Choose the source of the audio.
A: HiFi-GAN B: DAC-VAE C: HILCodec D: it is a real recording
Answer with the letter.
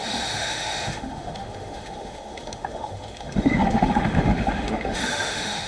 B